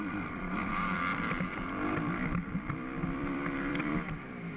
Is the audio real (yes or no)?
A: no